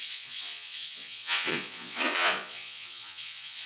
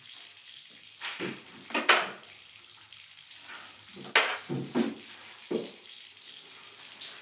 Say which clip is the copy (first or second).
first